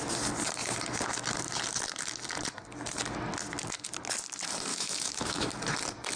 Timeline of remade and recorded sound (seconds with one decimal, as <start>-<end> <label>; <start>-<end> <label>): 0.0-4.7 recorded; 4.7-5.5 remade; 5.5-6.2 recorded